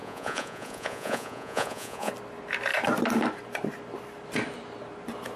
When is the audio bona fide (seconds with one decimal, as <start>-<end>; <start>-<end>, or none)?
2.1-5.4